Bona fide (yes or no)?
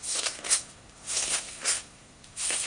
no